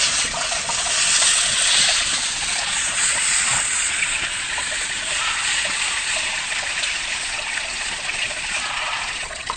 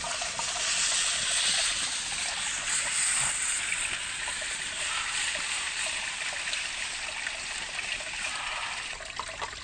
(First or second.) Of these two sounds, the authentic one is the second